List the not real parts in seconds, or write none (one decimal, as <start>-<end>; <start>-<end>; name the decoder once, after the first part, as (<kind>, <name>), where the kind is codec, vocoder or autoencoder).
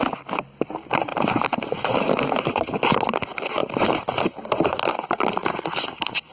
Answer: none